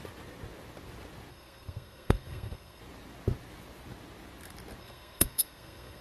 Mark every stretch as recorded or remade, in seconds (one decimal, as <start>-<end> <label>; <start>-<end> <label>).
0.0-1.3 recorded; 1.3-2.8 remade; 2.8-4.8 recorded; 4.8-6.0 remade